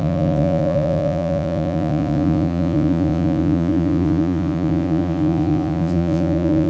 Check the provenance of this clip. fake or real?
fake